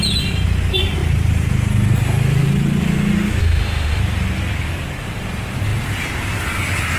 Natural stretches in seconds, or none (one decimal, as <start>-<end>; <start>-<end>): 0.0-3.4; 4.0-7.0